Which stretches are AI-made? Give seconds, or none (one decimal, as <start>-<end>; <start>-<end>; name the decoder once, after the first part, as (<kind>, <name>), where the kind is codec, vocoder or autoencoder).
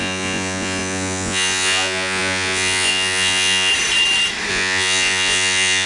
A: 0.0-3.7 (vocoder, Vocos); 4.5-5.9